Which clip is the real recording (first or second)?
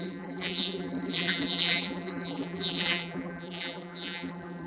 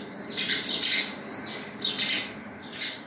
second